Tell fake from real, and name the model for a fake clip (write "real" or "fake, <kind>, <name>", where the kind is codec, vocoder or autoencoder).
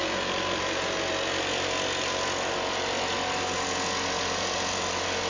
real